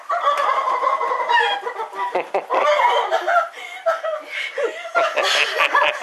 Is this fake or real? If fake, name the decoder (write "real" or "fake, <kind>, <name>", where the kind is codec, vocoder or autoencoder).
real